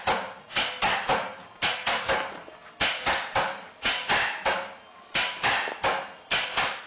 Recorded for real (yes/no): yes